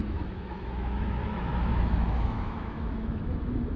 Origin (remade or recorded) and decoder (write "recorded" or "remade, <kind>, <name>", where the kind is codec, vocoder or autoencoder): remade, autoencoder, DAC-VAE